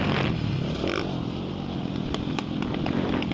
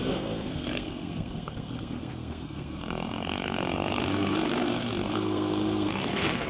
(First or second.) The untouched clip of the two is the first